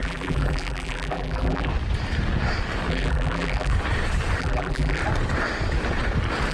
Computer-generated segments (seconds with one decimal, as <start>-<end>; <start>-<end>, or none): 0.0-1.7; 2.9-3.7; 4.4-5.0